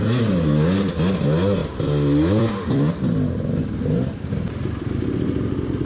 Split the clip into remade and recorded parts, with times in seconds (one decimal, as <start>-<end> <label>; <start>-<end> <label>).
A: 0.0-1.6 recorded; 1.6-2.9 remade; 2.9-5.9 recorded